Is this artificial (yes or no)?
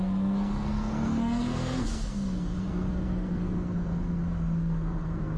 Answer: yes